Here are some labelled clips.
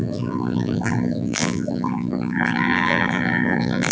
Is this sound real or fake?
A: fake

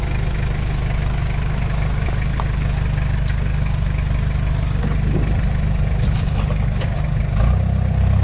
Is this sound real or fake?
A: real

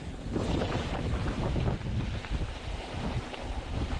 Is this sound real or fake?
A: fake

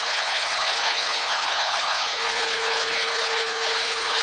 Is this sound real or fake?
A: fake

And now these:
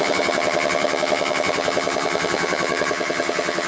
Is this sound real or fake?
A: fake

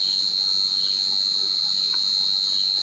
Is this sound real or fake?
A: real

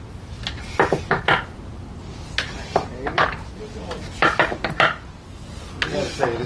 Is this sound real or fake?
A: real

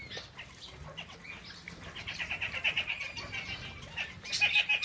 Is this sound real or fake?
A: real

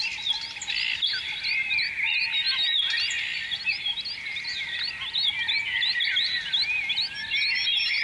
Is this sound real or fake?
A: real